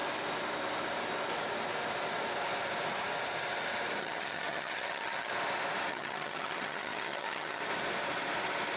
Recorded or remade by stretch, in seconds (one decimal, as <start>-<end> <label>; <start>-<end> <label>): 0.0-4.0 recorded; 4.0-5.3 remade; 5.3-5.9 recorded; 5.9-7.6 remade; 7.6-8.8 recorded